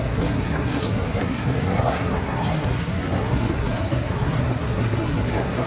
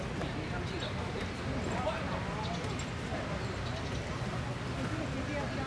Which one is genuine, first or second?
second